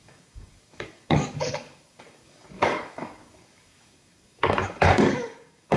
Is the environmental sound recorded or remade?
remade